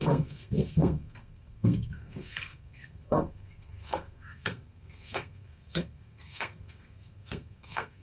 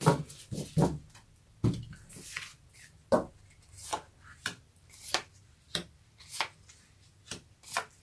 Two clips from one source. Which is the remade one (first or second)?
first